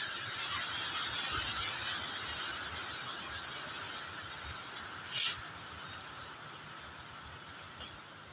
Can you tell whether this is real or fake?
real